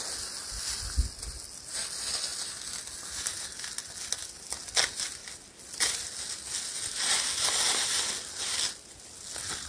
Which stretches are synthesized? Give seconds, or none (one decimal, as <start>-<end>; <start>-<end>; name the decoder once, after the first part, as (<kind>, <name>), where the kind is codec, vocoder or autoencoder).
none